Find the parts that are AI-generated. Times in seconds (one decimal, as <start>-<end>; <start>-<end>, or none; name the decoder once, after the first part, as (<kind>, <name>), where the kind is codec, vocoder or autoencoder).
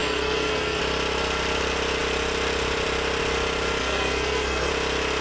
0.0-0.8 (codec, SNAC); 3.8-4.7